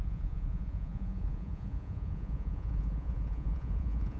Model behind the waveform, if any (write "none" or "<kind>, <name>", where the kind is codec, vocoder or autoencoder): vocoder, Vocos